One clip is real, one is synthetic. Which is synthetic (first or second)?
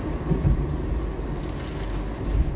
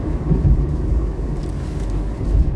second